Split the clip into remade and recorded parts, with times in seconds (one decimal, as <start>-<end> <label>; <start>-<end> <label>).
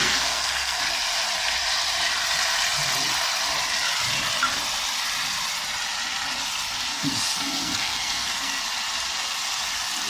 0.0-0.8 remade; 0.8-6.9 recorded; 6.9-8.6 remade; 8.6-10.1 recorded